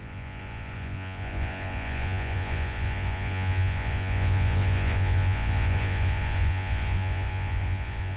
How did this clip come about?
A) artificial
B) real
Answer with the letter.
A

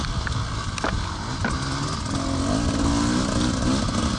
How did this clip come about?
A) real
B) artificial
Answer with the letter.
A